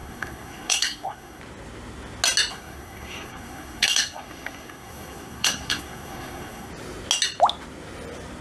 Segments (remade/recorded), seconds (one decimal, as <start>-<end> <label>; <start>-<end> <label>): 0.0-1.4 remade; 1.4-2.5 recorded; 2.5-6.7 remade; 6.7-8.4 recorded